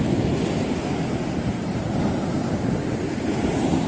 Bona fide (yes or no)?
yes